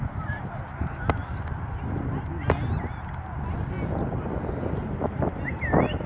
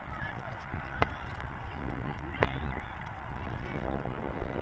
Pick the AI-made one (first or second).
second